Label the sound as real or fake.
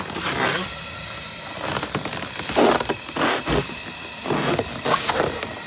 real